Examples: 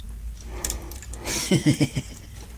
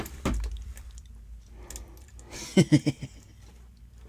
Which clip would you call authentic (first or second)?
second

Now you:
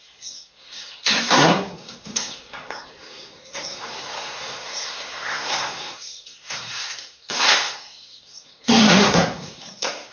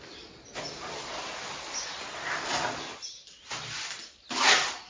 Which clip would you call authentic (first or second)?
second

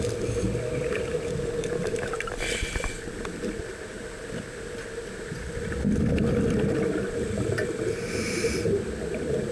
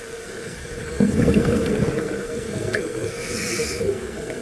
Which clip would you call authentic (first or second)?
first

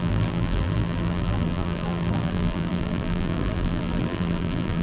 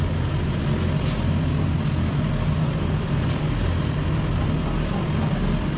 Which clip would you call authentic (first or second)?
second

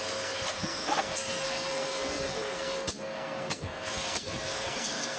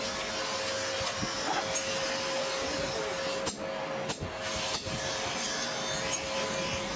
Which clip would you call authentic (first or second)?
second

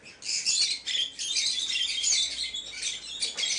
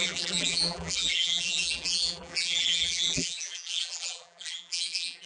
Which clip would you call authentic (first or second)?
first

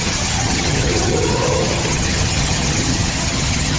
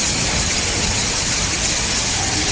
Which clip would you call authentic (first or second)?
second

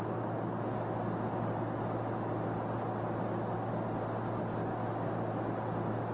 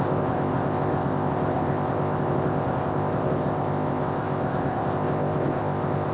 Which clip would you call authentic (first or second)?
first